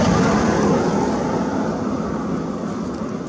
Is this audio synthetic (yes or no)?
no